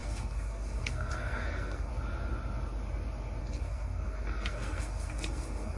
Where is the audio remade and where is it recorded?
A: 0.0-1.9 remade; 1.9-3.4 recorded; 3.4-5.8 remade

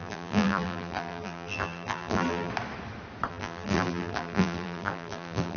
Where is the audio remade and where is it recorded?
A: 0.0-2.5 remade; 2.5-3.3 recorded; 3.3-5.6 remade

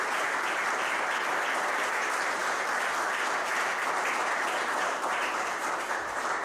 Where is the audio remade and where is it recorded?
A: 0.0-2.4 remade; 2.4-4.0 recorded; 4.0-6.4 remade

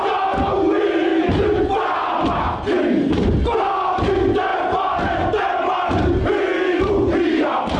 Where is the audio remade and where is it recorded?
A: 0.0-7.8 recorded

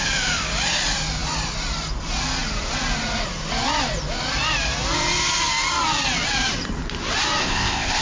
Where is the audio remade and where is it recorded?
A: 0.0-7.4 recorded; 7.4-8.0 remade

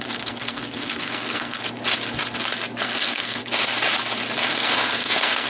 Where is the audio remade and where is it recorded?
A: 0.0-1.6 remade; 1.6-2.8 recorded; 2.8-3.4 remade; 3.4-4.5 recorded; 4.5-5.5 remade

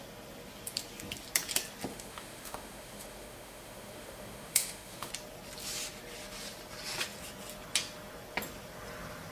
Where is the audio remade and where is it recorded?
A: 0.0-1.9 recorded; 1.9-5.1 remade; 5.1-9.3 recorded